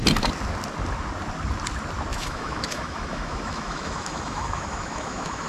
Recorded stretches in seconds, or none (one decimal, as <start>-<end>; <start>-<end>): 0.0-2.1